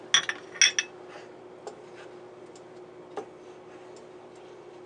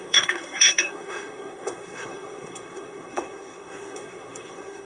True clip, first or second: first